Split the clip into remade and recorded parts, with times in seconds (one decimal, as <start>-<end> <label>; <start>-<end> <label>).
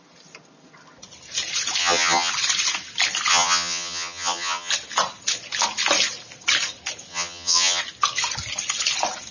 0.0-1.8 recorded; 1.8-2.3 remade; 2.3-3.3 recorded; 3.3-4.7 remade; 4.7-7.1 recorded; 7.1-7.8 remade; 7.8-9.3 recorded